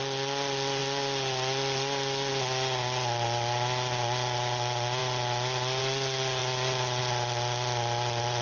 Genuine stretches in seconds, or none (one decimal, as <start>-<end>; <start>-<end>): 0.0-8.4